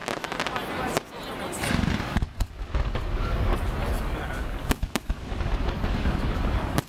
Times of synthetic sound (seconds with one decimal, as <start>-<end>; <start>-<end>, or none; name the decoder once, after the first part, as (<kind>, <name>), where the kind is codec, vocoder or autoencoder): 2.0-3.5 (codec, DAC); 4.0-6.9